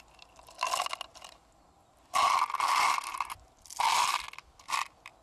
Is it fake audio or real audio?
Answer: real